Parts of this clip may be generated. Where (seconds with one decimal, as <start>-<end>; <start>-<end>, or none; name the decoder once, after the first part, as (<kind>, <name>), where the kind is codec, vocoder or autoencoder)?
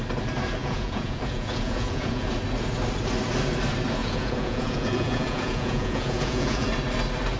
0.6-2.3 (vocoder, Vocos); 4.0-6.7